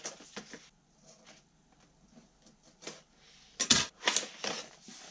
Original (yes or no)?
yes